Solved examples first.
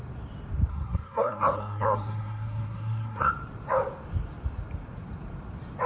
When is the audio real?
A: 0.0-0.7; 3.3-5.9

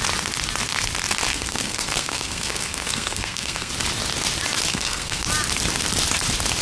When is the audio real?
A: 0.0-1.3; 3.7-4.7; 5.2-6.6

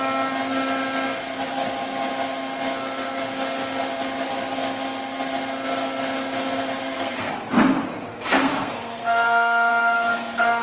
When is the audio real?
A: 0.0-6.8; 7.3-8.1; 9.7-10.6

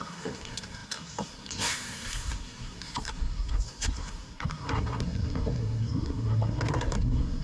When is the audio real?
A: none

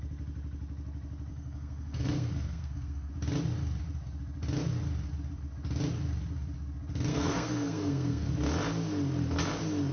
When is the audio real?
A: 0.0-1.3; 3.1-7.1; 8.3-9.9

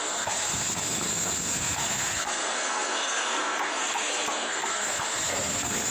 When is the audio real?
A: none